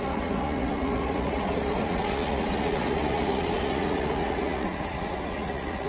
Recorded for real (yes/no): no